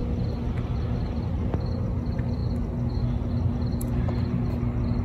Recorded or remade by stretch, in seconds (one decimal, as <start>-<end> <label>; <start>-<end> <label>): 0.0-5.0 recorded